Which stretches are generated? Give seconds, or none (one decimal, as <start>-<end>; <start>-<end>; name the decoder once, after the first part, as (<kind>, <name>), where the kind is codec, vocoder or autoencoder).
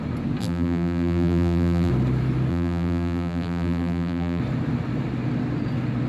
0.4-1.9 (vocoder, BigVGAN v2); 2.5-4.4